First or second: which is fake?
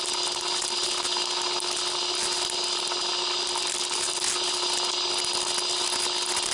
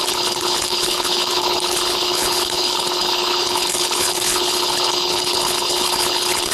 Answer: second